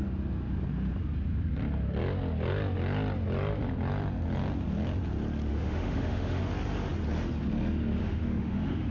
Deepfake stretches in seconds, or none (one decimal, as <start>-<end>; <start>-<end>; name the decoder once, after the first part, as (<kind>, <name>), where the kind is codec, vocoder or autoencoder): 5.5-6.4 (autoencoder, DAC-VAE); 8.0-8.9